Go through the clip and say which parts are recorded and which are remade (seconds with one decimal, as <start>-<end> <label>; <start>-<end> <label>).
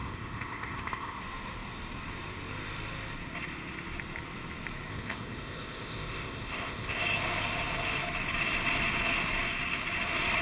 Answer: 0.0-1.2 remade; 1.2-4.9 recorded; 4.9-7.0 remade; 7.0-10.4 recorded